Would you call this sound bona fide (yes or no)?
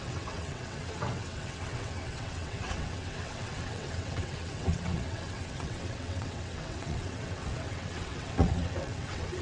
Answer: no